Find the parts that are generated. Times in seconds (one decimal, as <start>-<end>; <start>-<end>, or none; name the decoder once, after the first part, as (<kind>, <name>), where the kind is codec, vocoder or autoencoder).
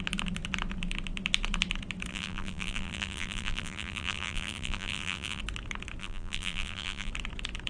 2.1-5.4 (vocoder, BigVGAN v2); 6.0-7.1